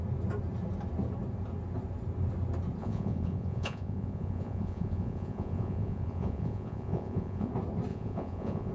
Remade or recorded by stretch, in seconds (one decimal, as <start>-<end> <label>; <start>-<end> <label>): 0.0-2.8 recorded; 2.8-7.5 remade; 7.5-7.9 recorded; 7.9-8.7 remade